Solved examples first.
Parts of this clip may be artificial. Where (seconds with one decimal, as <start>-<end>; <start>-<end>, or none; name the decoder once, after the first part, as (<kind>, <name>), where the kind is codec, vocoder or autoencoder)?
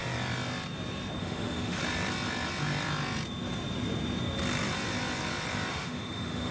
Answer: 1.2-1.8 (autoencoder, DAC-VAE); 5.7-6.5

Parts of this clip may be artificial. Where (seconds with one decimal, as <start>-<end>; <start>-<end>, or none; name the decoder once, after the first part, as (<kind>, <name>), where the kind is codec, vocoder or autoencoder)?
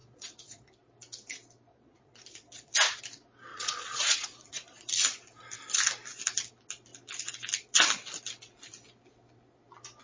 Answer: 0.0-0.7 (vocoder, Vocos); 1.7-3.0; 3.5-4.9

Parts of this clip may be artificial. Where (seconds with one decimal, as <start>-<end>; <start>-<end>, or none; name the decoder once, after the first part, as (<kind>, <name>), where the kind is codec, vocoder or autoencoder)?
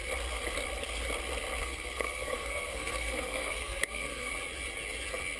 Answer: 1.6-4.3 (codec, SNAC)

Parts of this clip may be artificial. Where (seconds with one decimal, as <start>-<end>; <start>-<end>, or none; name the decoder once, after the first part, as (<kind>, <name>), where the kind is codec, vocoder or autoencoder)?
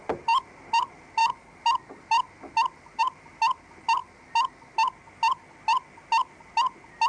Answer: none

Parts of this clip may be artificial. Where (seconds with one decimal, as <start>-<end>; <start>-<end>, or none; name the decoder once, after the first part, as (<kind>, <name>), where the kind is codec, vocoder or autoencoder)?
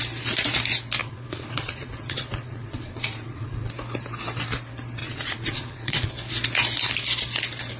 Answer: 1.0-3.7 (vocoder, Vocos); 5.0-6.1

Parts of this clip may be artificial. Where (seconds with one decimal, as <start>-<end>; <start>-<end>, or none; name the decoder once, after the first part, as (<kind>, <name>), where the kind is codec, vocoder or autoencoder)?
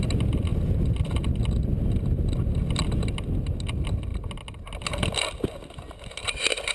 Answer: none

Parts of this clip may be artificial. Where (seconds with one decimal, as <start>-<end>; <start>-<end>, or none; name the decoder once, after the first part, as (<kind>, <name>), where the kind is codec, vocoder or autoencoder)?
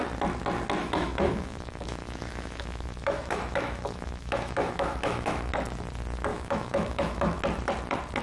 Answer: 0.8-5.5 (autoencoder, DAC-VAE); 6.3-7.4